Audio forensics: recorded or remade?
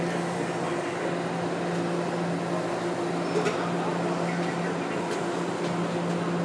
recorded